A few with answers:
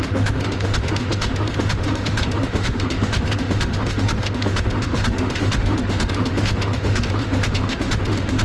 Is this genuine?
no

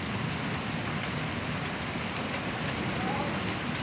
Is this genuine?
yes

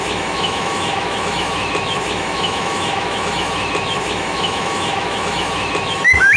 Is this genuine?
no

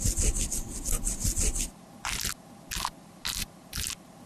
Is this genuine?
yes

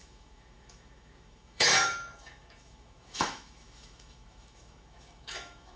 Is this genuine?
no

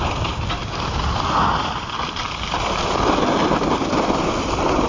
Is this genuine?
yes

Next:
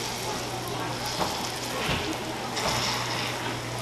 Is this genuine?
yes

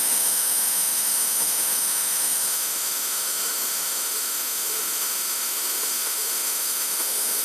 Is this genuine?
no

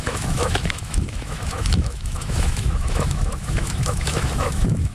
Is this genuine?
no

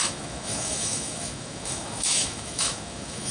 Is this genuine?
no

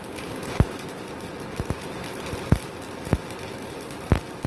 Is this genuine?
yes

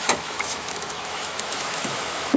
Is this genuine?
no